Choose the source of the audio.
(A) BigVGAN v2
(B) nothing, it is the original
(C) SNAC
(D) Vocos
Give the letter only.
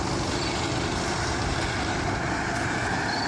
B